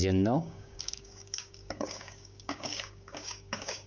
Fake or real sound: fake